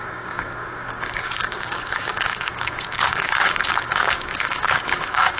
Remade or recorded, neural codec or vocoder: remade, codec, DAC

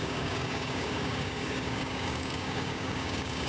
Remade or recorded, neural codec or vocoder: remade, codec, DAC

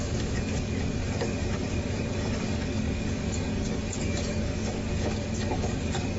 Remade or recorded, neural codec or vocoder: remade, codec, DAC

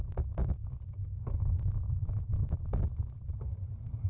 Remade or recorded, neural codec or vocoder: recorded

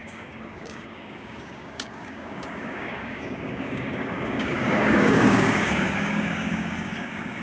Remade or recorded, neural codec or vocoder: remade, codec, DAC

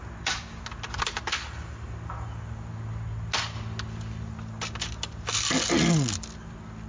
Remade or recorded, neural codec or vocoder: recorded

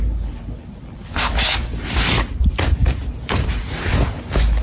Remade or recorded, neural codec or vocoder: recorded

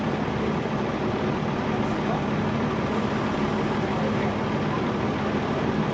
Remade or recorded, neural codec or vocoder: recorded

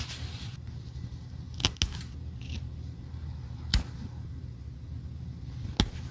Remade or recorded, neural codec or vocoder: recorded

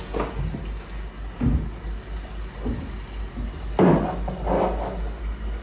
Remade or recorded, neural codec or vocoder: recorded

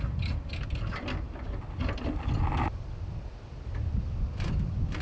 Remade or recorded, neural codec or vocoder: recorded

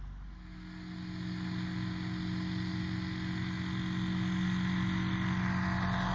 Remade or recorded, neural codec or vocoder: recorded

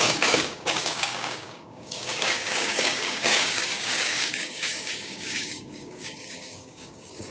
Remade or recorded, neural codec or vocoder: remade, codec, DAC